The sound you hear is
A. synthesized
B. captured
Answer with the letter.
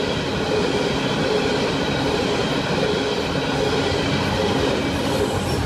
B